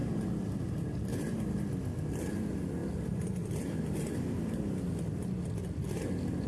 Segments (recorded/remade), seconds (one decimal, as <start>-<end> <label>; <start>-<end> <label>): 0.0-1.7 remade; 1.7-2.8 recorded; 2.8-4.6 remade; 4.6-6.5 recorded